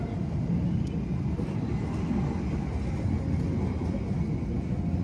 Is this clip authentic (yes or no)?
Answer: yes